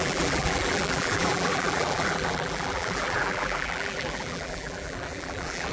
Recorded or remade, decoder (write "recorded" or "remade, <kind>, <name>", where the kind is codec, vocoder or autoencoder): remade, vocoder, BigVGAN v2